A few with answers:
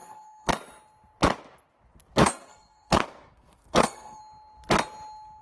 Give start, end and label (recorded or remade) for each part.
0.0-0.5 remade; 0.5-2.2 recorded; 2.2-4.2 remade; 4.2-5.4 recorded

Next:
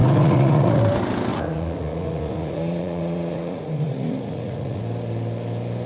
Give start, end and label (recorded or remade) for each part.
0.0-0.8 remade; 0.8-1.3 recorded; 1.3-4.8 remade; 4.8-5.9 recorded

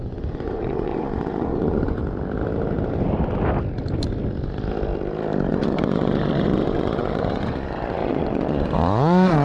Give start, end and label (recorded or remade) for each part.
0.0-2.0 remade; 2.0-5.5 recorded; 5.5-9.4 remade

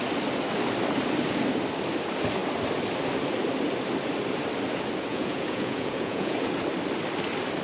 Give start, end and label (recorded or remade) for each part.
0.0-5.1 recorded; 5.1-6.5 remade; 6.5-7.6 recorded

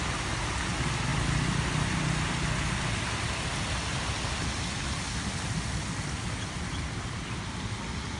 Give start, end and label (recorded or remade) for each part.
0.0-8.2 recorded